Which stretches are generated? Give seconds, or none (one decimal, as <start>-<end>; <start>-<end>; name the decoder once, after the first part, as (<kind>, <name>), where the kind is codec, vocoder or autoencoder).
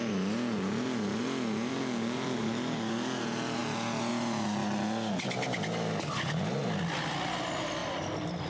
1.7-3.2 (codec, DAC)